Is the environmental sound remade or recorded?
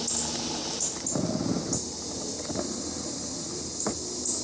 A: recorded